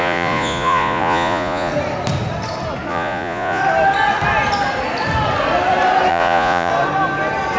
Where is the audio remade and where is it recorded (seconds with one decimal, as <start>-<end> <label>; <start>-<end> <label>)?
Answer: 0.0-1.7 remade; 1.7-2.9 recorded; 2.9-3.6 remade; 3.6-6.1 recorded; 6.1-6.7 remade; 6.7-7.6 recorded